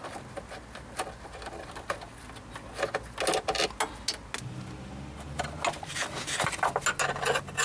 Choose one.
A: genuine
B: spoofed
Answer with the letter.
A